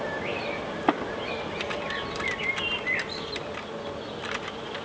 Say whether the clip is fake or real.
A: real